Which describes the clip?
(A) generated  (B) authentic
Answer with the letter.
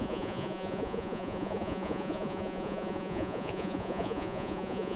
A